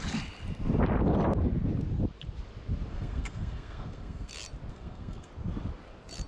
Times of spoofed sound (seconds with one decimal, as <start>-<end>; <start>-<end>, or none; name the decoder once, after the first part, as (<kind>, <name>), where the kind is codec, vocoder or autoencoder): 2.9-4.3 (codec, SNAC); 4.7-5.3